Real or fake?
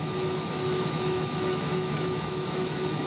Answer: fake